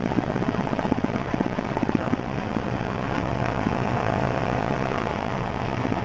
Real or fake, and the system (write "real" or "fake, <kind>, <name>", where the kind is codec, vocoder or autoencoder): fake, vocoder, WaveNeXt